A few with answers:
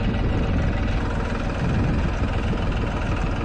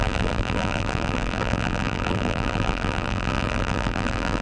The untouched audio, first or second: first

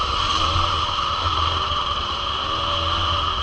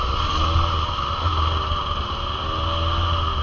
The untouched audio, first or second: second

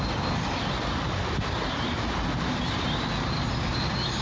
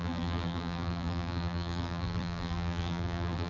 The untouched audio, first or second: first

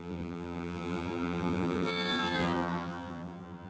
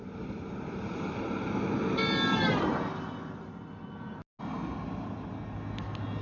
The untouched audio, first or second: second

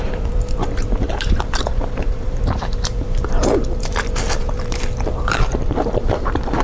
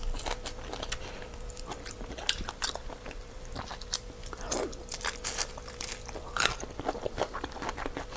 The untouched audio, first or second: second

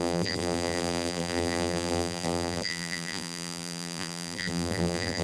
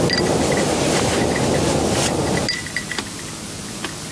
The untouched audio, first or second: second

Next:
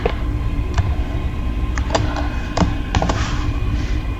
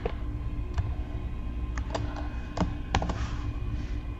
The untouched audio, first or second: second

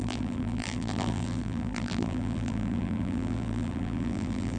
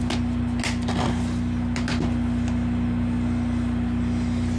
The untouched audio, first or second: second